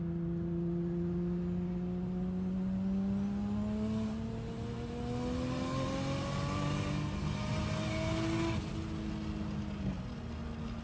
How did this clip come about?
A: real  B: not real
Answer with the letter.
A